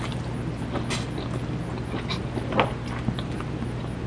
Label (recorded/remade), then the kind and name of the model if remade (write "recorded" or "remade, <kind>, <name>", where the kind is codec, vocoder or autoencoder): recorded